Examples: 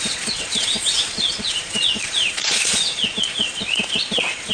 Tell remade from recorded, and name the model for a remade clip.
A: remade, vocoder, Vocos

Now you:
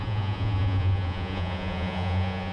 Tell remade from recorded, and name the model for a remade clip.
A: remade, vocoder, Vocos